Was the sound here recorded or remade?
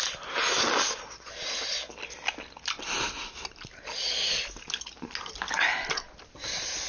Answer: recorded